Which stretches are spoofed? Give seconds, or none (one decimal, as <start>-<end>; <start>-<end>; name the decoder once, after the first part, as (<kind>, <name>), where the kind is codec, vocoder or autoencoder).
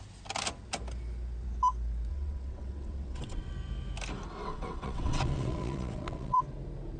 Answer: 2.1-3.5 (vocoder, WaveNeXt); 4.4-6.4